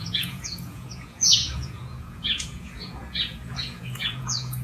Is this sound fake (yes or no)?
yes